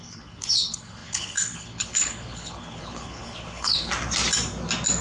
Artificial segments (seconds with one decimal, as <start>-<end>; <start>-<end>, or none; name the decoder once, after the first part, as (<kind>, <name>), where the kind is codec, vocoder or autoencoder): 0.0-3.9 (codec, HILCodec)